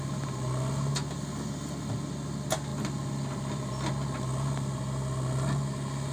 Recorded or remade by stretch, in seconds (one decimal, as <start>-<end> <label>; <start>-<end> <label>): 0.0-2.7 recorded; 2.7-3.9 remade; 3.9-6.1 recorded